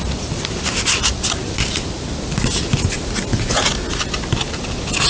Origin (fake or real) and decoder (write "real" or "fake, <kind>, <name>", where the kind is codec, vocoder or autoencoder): real